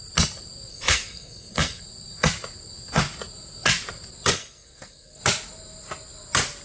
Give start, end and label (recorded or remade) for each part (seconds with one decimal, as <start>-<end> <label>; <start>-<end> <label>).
0.0-0.7 recorded; 0.7-1.8 remade; 1.8-4.3 recorded; 4.3-5.2 remade; 5.2-6.6 recorded